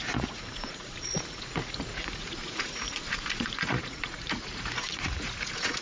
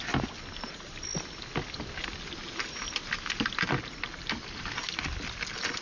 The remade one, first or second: first